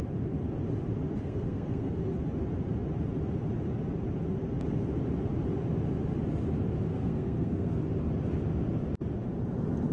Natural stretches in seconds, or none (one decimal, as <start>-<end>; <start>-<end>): 0.0-1.2; 1.9-6.9; 7.8-9.9